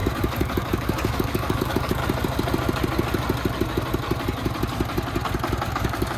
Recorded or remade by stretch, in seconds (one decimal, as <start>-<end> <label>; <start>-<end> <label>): 0.0-2.0 remade; 2.0-5.7 recorded; 5.7-6.2 remade